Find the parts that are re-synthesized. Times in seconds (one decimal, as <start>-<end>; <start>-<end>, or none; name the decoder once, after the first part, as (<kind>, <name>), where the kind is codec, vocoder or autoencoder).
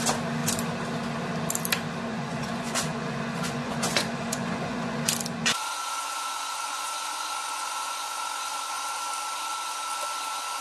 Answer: 2.1-5.0 (vocoder, Vocos); 5.4-8.8